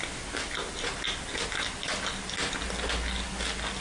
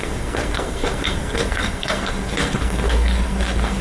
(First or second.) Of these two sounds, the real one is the first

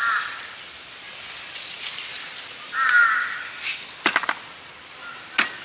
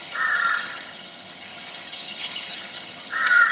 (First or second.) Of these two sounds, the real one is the first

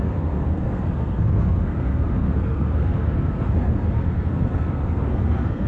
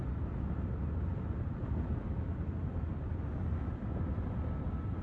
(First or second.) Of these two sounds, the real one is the second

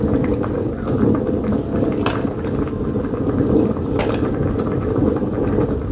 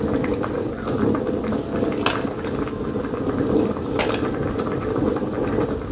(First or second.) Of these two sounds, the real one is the second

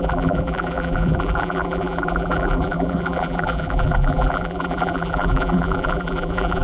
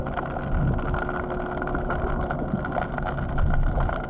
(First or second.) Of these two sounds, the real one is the second